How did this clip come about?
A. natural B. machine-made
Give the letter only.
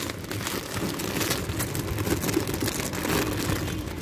A